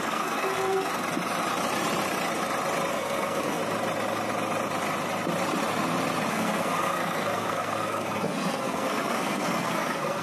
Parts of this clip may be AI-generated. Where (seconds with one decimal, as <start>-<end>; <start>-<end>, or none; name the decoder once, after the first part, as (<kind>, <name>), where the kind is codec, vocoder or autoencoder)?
0.0-0.9 (codec, SNAC); 2.9-3.6; 6.3-10.2